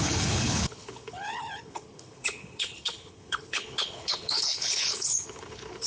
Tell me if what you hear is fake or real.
fake